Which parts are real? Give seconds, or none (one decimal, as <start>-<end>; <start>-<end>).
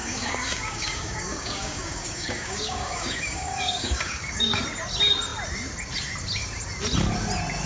4.6-7.7